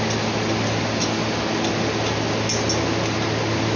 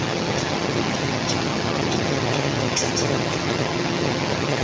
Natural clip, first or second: first